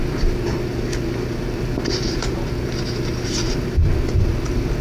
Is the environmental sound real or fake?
real